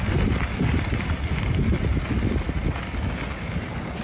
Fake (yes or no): no